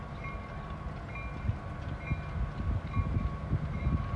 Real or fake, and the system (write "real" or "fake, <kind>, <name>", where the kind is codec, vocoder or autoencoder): real